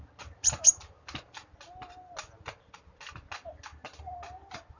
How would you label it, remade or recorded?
recorded